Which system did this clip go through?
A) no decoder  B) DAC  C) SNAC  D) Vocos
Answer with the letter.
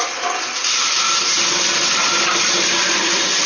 A